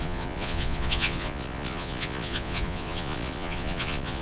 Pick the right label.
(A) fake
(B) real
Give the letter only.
A